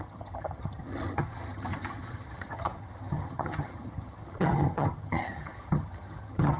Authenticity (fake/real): fake